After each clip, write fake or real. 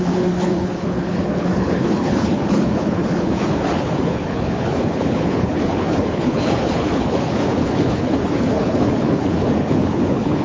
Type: fake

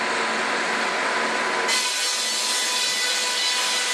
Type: real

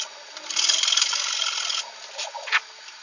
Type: real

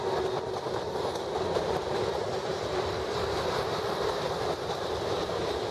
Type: real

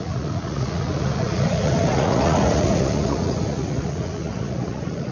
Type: fake